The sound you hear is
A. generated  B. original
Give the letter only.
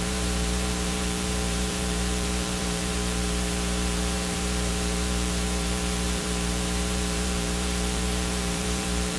A